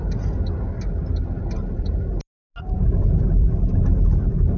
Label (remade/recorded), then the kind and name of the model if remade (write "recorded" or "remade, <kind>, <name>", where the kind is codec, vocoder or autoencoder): recorded